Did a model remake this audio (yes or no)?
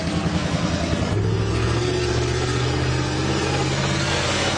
yes